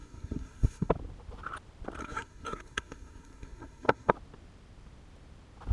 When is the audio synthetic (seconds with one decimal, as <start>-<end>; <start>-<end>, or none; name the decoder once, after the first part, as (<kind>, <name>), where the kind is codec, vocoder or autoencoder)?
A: 0.0-0.9 (codec, SNAC); 2.0-4.1